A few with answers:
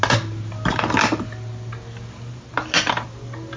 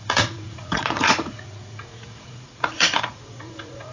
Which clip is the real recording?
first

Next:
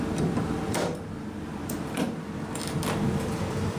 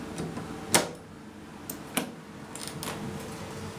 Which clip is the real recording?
second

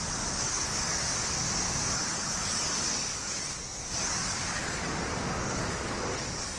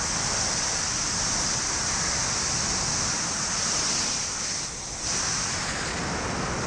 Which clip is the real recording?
second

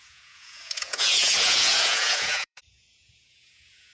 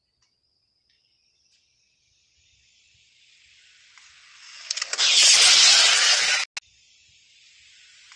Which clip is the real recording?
second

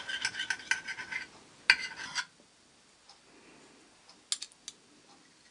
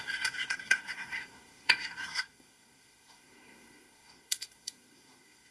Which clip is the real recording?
first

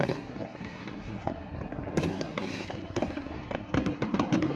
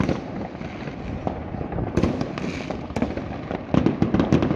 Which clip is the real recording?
second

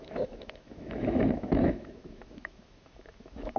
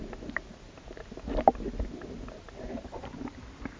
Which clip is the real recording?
second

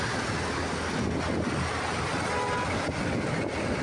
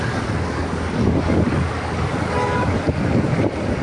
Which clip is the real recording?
first